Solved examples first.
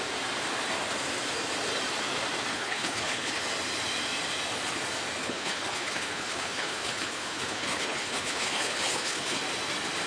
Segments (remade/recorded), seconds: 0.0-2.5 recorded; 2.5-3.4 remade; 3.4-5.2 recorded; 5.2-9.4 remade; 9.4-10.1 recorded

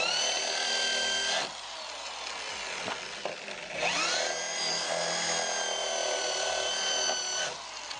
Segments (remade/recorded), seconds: 0.0-6.0 recorded; 6.0-6.5 remade; 6.5-8.0 recorded

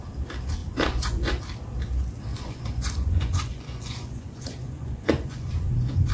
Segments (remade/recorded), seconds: 0.0-0.6 recorded; 0.6-1.4 remade; 1.4-2.3 recorded; 2.3-6.1 remade

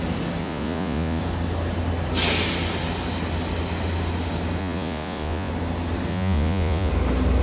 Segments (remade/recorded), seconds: 0.0-0.4 recorded; 0.4-1.2 remade; 1.2-4.6 recorded; 4.6-5.5 remade; 5.5-6.1 recorded; 6.1-6.9 remade; 6.9-7.4 recorded

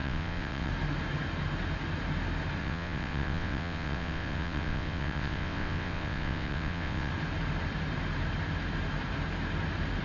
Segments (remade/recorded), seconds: 0.0-0.7 remade; 0.7-2.6 recorded; 2.6-7.1 remade; 7.1-10.0 recorded

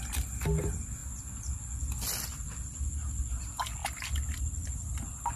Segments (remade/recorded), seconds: 0.0-5.4 recorded

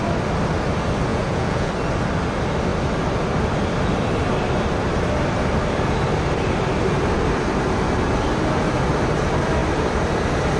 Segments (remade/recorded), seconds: 0.0-1.1 recorded; 1.1-1.7 remade; 1.7-10.6 recorded

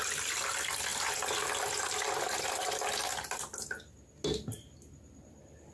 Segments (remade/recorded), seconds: 0.0-5.7 recorded